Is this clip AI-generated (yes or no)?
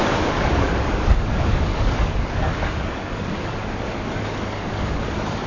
yes